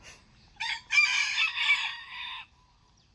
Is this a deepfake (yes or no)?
no